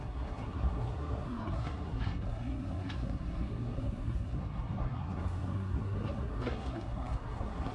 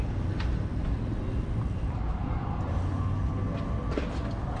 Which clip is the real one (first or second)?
second